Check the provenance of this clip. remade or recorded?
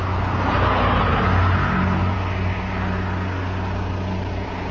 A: recorded